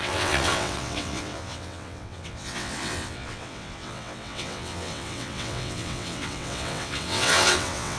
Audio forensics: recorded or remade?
remade